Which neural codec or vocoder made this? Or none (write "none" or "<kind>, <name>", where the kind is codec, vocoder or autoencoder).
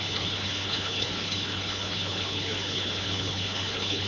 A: codec, HILCodec